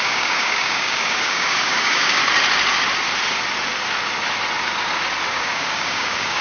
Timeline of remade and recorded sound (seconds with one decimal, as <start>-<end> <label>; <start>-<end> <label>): 0.0-2.2 remade; 2.2-5.3 recorded; 5.3-6.4 remade